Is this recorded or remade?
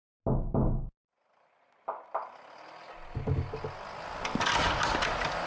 recorded